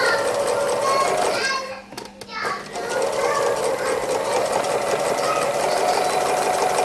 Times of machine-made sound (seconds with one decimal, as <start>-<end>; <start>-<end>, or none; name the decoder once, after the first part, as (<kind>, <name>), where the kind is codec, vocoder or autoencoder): none